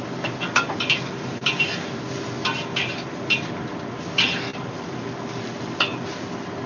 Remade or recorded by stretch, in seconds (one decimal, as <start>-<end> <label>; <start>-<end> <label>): 0.0-6.7 recorded